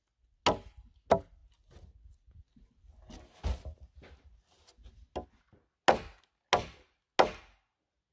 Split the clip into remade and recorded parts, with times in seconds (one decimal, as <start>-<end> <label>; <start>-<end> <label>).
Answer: 0.0-8.1 recorded